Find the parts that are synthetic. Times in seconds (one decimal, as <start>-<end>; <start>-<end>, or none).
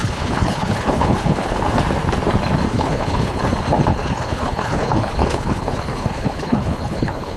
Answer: 0.0-1.6; 2.7-3.4; 3.9-7.4